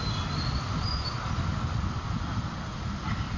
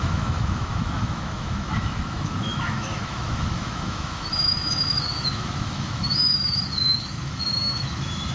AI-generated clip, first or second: second